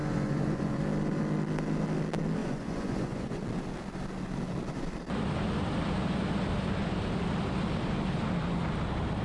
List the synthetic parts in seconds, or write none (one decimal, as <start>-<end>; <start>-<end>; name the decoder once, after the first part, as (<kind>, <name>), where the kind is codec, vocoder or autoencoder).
0.0-0.8 (vocoder, Vocos); 2.4-3.4